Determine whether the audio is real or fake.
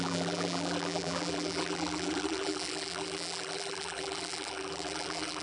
fake